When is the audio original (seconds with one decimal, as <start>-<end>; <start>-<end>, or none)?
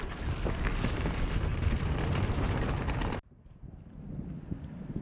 0.0-1.5; 2.2-5.0